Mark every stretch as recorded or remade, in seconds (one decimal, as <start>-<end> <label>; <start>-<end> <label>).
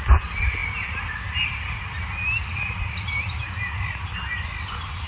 0.0-5.1 recorded